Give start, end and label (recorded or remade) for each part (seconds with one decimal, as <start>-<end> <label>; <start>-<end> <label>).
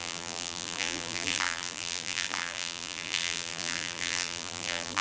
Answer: 0.0-5.0 remade